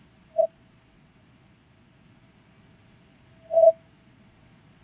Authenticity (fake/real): fake